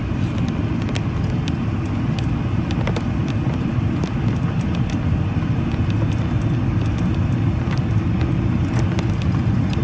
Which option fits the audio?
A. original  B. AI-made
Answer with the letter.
A